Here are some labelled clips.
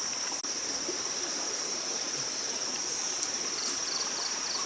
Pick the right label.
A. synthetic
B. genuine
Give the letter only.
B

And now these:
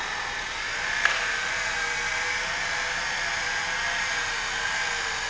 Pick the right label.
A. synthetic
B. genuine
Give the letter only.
A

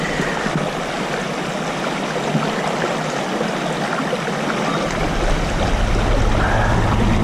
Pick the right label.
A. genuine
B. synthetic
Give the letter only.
A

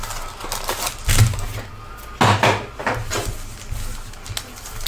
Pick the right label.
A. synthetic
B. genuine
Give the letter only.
B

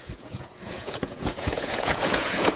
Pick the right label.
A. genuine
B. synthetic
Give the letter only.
B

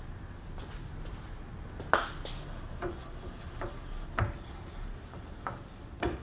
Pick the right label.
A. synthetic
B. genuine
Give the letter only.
B